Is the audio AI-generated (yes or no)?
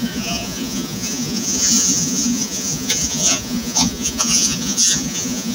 yes